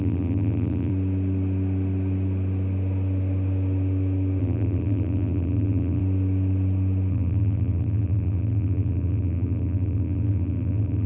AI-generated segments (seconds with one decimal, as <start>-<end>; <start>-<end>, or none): 0.0-0.9; 4.4-6.0; 7.1-11.1